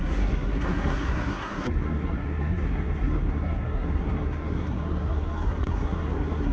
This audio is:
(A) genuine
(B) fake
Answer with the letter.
B